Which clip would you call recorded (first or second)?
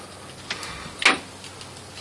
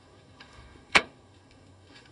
first